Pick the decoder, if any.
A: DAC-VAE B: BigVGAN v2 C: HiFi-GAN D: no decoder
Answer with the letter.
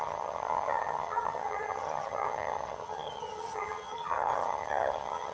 C